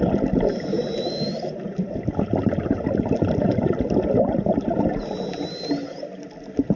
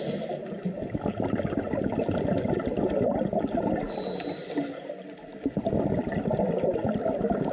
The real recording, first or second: second